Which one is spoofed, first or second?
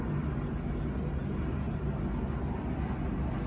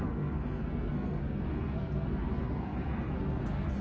second